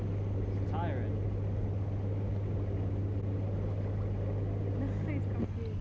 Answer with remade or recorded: recorded